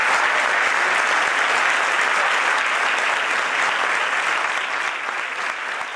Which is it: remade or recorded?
recorded